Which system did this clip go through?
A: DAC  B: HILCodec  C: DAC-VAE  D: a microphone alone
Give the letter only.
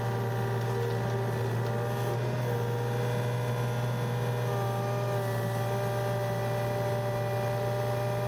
D